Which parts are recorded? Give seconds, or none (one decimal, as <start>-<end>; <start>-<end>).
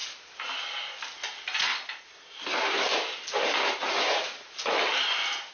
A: 0.0-5.5